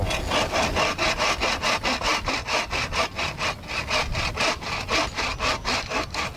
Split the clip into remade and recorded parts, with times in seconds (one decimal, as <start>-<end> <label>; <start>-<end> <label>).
0.0-6.4 recorded